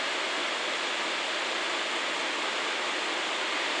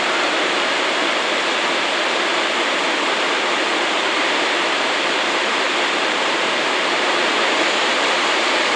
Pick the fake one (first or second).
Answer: second